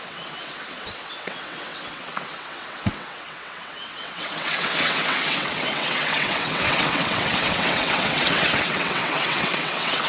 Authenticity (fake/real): fake